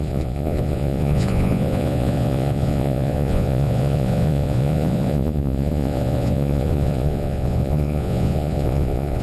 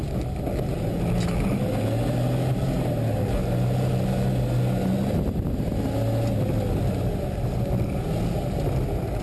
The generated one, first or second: first